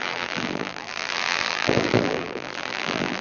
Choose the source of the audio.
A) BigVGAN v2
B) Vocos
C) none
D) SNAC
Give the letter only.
A